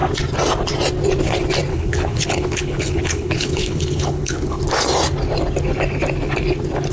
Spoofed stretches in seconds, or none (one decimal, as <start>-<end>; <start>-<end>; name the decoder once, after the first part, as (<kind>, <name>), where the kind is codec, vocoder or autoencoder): 1.7-4.6 (codec, HILCodec)